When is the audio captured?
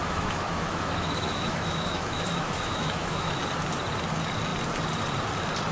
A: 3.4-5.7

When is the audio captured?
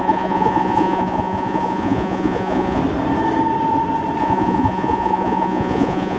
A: 2.8-4.2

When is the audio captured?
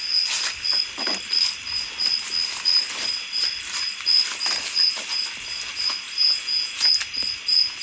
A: 0.0-6.2; 6.9-7.8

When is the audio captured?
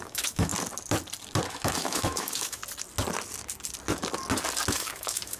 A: 0.5-1.5; 2.6-4.7